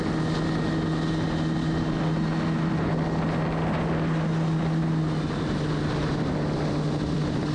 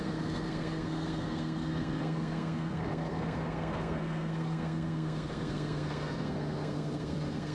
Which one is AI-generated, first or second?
second